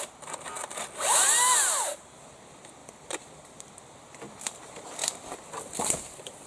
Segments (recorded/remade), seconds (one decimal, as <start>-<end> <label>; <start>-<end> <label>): 0.0-2.8 recorded; 2.8-3.7 remade; 3.7-5.0 recorded; 5.0-5.9 remade; 5.9-6.5 recorded

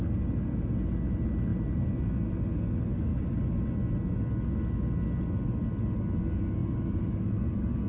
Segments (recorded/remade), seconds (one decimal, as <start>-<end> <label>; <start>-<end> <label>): 0.0-1.5 recorded; 1.5-2.0 remade; 2.0-6.6 recorded; 6.6-7.4 remade; 7.4-7.9 recorded

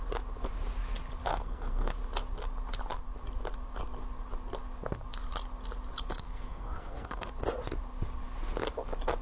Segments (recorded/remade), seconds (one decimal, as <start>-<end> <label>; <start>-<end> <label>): 0.0-1.3 recorded; 1.3-2.0 remade; 2.0-6.2 recorded; 6.2-7.3 remade; 7.3-9.2 recorded

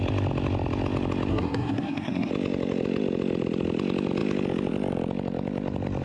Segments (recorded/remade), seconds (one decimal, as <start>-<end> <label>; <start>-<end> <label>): 0.0-1.3 recorded; 1.3-2.3 remade; 2.3-6.0 recorded

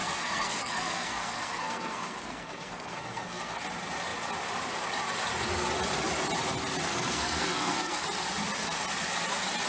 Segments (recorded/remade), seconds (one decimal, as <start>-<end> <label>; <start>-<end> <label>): 0.0-3.6 remade; 3.6-6.9 recorded; 6.9-8.1 remade; 8.1-9.7 recorded